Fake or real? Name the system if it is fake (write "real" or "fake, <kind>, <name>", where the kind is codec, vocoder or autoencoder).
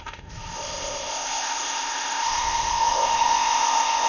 fake, codec, ZipCodec